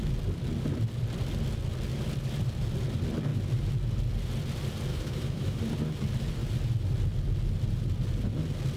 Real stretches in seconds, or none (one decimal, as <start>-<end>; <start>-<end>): 0.0-4.9; 5.6-8.8